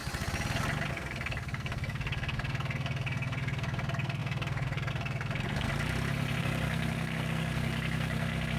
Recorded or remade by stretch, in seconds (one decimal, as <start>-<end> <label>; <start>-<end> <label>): 0.0-0.9 recorded; 0.9-5.7 remade; 5.7-6.4 recorded; 6.4-8.6 remade